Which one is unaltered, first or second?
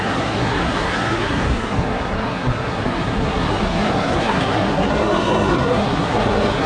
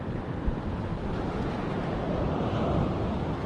second